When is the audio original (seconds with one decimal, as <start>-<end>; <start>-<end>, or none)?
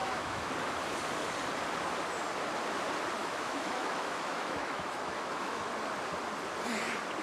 0.5-3.2; 5.7-7.2